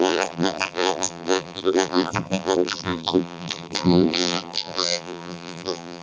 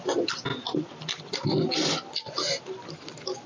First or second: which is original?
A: second